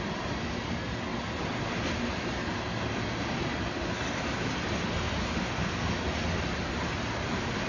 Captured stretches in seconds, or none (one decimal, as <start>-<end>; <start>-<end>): 0.0-7.7